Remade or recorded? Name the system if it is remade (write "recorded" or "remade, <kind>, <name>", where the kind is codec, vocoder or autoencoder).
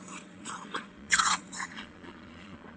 remade, vocoder, Vocos